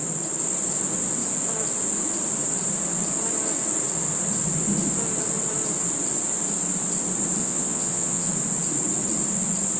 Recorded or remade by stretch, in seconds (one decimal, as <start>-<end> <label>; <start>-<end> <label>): 0.0-7.4 recorded; 7.4-8.3 remade; 8.3-9.8 recorded